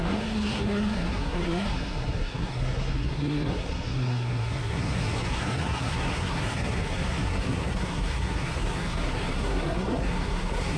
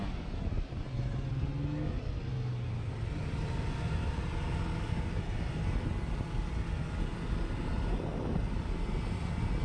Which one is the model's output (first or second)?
first